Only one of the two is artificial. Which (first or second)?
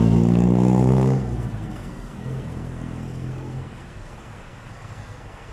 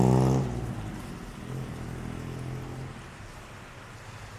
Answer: first